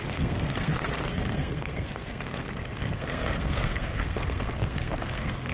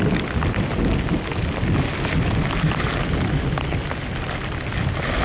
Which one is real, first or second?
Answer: second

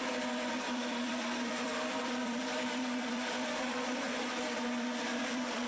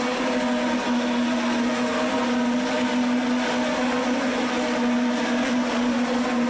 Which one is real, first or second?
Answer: second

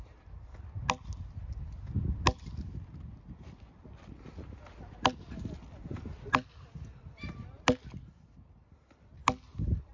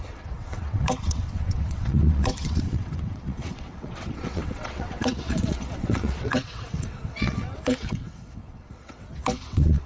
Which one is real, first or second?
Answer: first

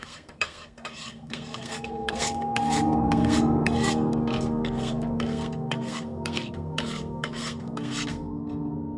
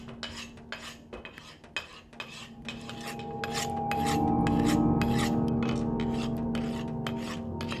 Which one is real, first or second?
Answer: second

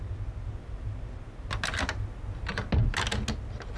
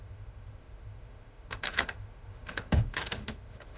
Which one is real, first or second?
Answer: first